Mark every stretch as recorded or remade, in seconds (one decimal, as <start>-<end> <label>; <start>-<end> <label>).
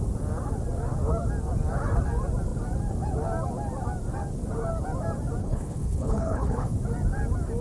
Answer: 0.0-5.4 recorded; 5.4-6.7 remade; 6.7-7.6 recorded